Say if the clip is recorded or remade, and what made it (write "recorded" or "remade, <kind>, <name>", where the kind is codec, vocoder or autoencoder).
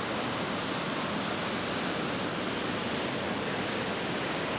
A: recorded